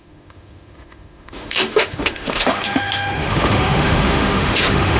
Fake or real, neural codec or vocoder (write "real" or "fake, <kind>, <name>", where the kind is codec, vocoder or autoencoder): fake, autoencoder, DAC-VAE